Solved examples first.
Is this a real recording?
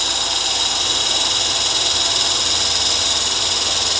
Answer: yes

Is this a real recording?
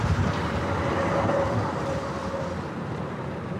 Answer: no